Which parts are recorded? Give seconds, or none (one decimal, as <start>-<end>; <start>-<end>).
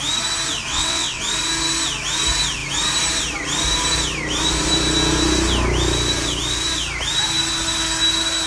0.0-0.7; 1.2-8.5